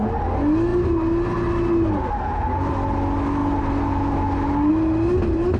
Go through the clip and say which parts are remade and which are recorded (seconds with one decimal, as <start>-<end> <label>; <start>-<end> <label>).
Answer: 0.0-5.6 recorded